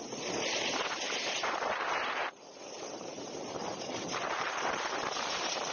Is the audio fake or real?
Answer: fake